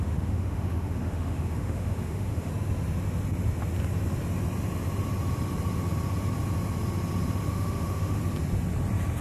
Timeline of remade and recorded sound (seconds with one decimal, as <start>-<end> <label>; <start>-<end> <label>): 0.0-2.5 remade; 2.5-7.5 recorded; 7.5-8.2 remade; 8.2-9.2 recorded

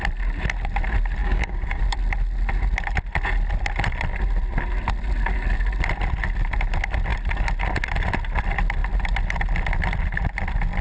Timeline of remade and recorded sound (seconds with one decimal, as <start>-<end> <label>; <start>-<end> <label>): 0.0-1.2 recorded; 1.2-1.8 remade; 1.8-10.8 recorded

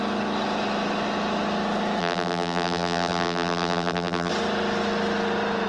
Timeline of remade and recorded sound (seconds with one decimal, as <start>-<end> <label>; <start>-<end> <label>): 0.0-2.0 recorded; 2.0-4.3 remade; 4.3-5.7 recorded

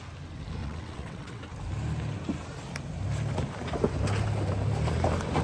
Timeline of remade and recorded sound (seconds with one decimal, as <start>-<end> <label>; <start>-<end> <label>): 0.0-0.6 recorded; 0.6-1.4 remade; 1.4-5.4 recorded

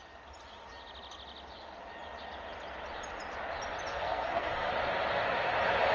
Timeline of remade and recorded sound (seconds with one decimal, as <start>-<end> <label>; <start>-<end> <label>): 0.0-3.9 recorded; 3.9-4.7 remade; 4.7-5.9 recorded

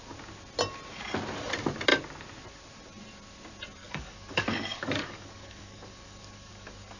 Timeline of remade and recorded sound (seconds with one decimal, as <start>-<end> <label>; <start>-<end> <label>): 0.0-3.8 recorded; 3.8-7.0 remade

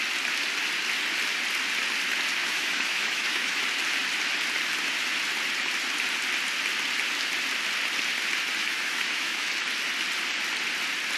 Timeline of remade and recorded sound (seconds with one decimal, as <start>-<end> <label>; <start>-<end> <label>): 0.0-2.4 recorded; 2.4-3.6 remade; 3.6-8.6 recorded; 8.6-9.5 remade; 9.5-11.2 recorded

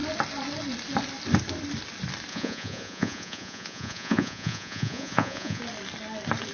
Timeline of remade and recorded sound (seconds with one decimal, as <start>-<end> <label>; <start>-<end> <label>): 0.0-2.3 recorded; 2.3-5.6 remade; 5.6-6.5 recorded